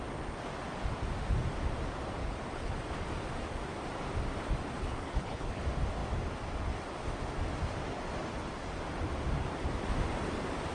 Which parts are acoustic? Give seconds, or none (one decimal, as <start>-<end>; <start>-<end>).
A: 0.0-2.2; 2.8-4.8; 5.6-10.7